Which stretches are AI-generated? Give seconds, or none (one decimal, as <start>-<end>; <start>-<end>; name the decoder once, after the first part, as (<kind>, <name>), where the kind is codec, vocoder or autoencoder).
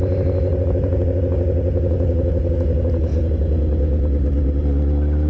none